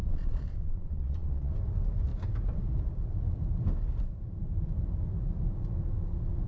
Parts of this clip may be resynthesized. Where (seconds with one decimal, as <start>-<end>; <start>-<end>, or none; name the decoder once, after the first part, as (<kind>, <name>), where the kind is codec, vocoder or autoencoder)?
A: 0.0-1.5 (vocoder, Vocos)

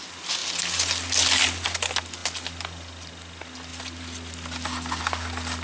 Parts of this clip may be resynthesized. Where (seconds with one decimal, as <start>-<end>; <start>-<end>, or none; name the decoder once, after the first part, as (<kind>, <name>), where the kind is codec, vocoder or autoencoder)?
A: none

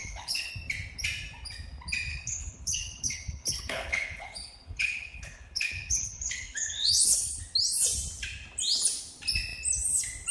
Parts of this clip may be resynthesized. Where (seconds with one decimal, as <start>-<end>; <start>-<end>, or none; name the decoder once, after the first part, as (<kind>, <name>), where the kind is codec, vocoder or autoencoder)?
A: 0.0-0.5 (codec, HILCodec); 2.1-7.4